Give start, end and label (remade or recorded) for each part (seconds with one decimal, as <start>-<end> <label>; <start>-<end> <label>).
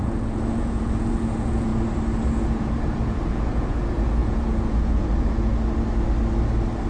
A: 0.0-1.7 remade; 1.7-2.3 recorded; 2.3-5.5 remade; 5.5-6.9 recorded